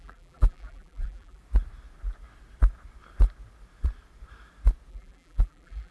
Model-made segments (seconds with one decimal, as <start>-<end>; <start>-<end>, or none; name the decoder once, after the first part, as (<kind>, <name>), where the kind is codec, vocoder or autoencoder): 0.0-1.4 (vocoder, BigVGAN v2); 4.9-5.9